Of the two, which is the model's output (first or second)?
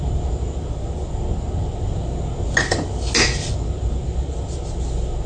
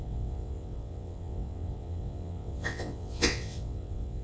second